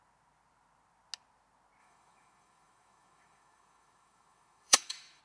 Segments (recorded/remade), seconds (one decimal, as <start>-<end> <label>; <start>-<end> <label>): 0.0-1.8 recorded; 1.8-5.2 remade